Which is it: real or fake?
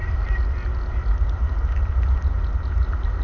real